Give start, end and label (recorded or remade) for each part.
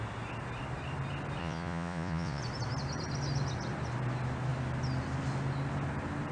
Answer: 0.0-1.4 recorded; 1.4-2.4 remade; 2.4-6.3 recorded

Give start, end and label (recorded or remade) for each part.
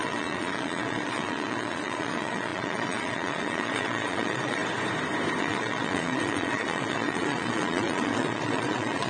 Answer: 0.0-4.6 remade; 4.6-5.4 recorded; 5.4-9.1 remade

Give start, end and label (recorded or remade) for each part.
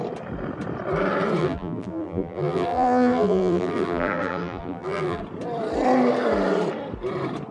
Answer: 0.0-1.4 recorded; 1.4-5.2 remade; 5.2-7.5 recorded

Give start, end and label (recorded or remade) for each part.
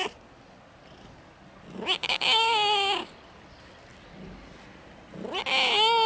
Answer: 0.0-2.0 recorded; 2.0-3.1 remade; 3.1-6.1 recorded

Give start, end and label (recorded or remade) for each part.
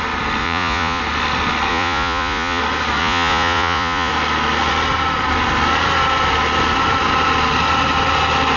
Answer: 0.0-0.4 recorded; 0.4-1.0 remade; 1.0-1.7 recorded; 1.7-2.6 remade; 2.6-3.0 recorded; 3.0-4.1 remade; 4.1-8.6 recorded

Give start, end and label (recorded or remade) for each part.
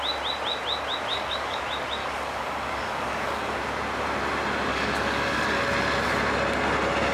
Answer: 0.0-1.1 recorded; 1.1-1.6 remade; 1.6-2.0 recorded; 2.0-3.6 remade; 3.6-4.7 recorded; 4.7-5.6 remade; 5.6-7.1 recorded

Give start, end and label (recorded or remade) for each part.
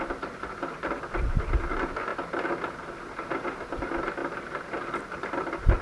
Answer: 0.0-5.8 recorded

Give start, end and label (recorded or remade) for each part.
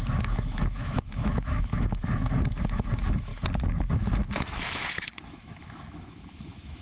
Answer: 0.0-3.3 remade; 3.3-3.9 recorded; 3.9-6.8 remade